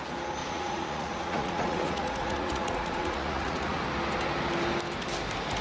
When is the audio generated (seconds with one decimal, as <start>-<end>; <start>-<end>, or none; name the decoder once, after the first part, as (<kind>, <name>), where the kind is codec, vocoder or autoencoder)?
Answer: 0.4-3.8 (vocoder, Vocos)